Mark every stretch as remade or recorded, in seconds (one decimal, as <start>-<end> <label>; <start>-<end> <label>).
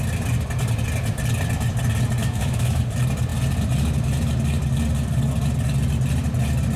0.0-2.2 recorded; 2.2-2.8 remade; 2.8-6.8 recorded